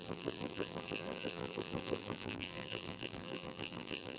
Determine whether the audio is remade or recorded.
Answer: remade